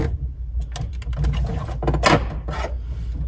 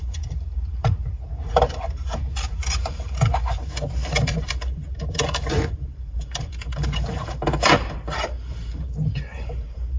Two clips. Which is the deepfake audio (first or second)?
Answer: second